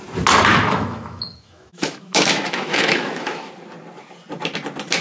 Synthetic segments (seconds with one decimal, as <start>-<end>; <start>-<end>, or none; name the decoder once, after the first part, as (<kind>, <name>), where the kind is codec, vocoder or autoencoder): 0.5-3.5 (autoencoder, DAC-VAE)